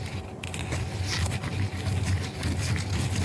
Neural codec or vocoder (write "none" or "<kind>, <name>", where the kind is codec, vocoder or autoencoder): none